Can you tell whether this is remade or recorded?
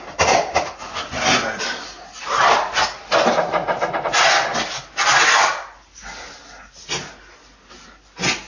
recorded